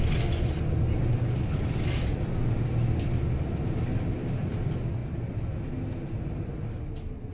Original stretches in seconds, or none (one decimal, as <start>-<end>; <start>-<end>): 0.0-7.3